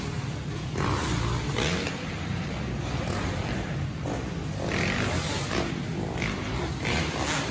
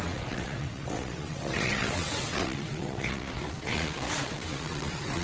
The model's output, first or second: second